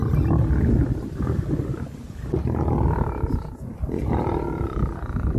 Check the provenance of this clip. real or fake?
real